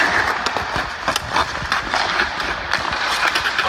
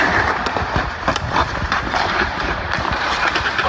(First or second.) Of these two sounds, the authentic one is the first